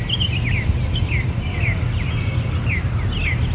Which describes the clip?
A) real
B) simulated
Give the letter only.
A